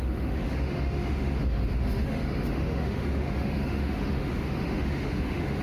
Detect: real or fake fake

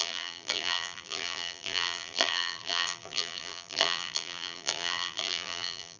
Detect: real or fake fake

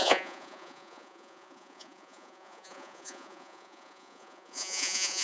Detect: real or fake fake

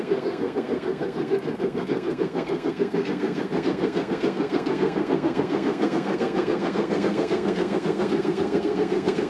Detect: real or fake fake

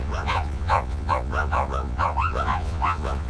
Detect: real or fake fake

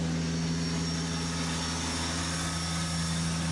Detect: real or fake real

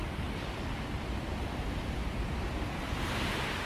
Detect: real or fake real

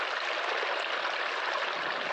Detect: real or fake real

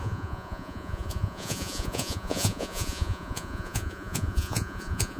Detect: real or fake fake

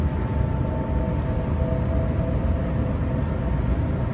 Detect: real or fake real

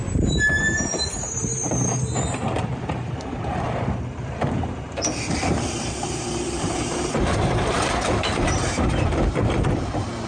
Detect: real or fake fake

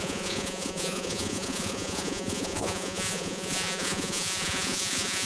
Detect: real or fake fake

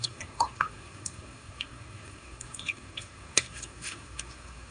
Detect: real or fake fake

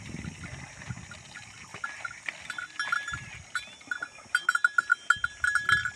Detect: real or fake real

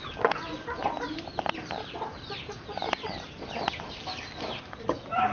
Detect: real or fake real